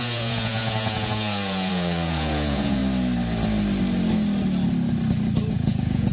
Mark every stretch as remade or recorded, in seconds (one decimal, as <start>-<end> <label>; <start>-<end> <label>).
0.0-2.8 remade; 2.8-5.5 recorded; 5.5-6.1 remade